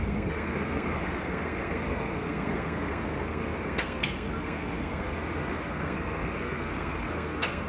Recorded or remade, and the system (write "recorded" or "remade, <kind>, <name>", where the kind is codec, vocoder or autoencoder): remade, codec, SNAC